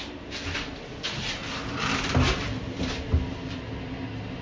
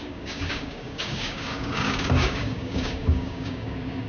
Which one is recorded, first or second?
first